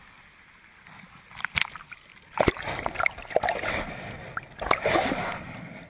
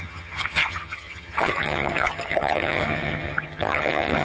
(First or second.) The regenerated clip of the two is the second